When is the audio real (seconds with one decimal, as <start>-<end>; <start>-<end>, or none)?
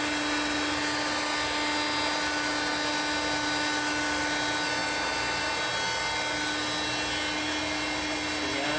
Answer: 0.0-8.8